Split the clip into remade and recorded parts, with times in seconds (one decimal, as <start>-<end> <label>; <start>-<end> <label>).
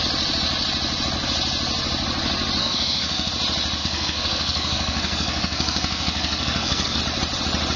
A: 0.0-2.6 recorded; 2.6-3.3 remade; 3.3-3.8 recorded; 3.8-7.0 remade; 7.0-7.8 recorded